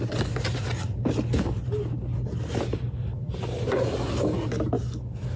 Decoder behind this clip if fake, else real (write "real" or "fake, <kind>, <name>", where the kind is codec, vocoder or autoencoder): real